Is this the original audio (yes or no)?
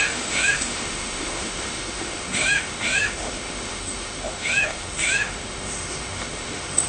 no